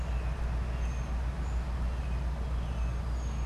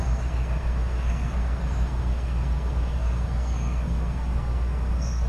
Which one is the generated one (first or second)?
second